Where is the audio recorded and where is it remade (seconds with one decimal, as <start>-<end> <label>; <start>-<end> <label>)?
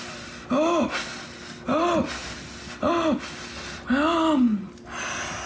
0.0-5.5 recorded